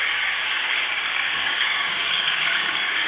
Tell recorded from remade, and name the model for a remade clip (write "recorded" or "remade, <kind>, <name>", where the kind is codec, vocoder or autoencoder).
remade, codec, DAC